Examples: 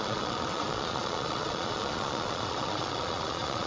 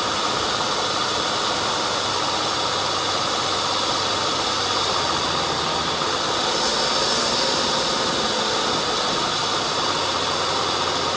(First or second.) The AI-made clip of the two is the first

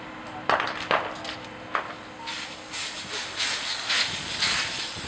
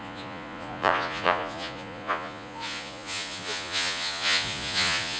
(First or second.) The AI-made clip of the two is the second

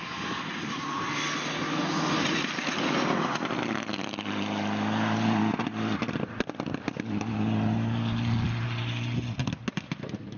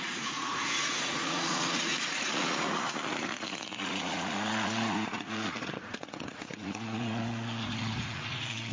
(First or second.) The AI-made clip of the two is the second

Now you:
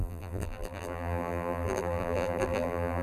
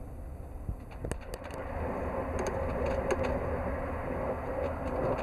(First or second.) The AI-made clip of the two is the first